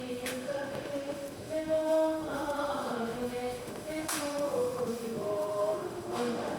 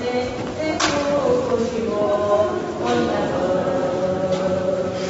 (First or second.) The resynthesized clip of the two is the first